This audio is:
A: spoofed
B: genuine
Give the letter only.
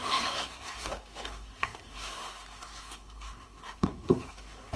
A